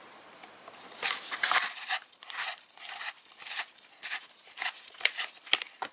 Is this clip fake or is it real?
fake